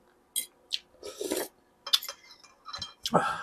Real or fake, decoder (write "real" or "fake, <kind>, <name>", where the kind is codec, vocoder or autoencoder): real